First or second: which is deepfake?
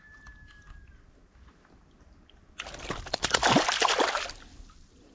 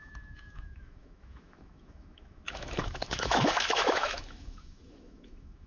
second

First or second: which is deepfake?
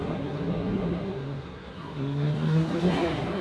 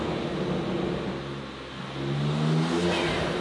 first